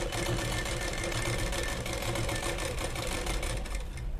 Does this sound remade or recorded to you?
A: recorded